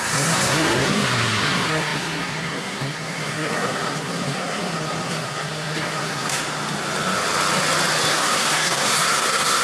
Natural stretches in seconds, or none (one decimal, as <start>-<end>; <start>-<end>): 6.4-8.1

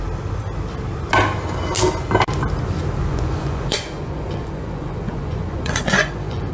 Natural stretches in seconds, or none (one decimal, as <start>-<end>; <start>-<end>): 0.0-3.0

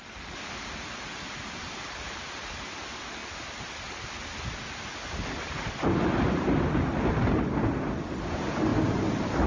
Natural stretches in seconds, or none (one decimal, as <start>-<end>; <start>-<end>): 0.0-9.5